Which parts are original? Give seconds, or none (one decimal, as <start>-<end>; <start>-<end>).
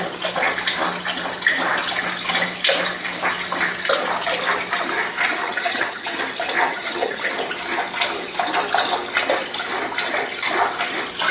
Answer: 0.0-5.4; 6.2-6.7; 7.3-11.3